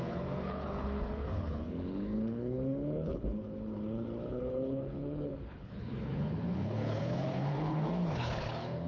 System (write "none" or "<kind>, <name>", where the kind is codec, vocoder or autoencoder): codec, HILCodec